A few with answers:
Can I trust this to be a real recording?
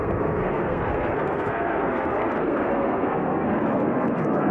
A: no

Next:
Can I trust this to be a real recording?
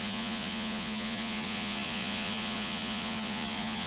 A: no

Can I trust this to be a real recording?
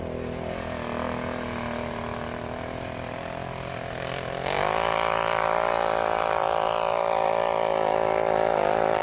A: yes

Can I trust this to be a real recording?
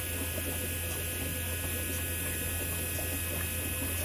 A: yes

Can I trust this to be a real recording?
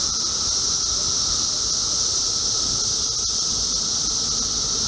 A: yes